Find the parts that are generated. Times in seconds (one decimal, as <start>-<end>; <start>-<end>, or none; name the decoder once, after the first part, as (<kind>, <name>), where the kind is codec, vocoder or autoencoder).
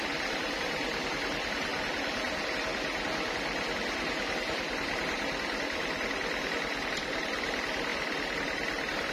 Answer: none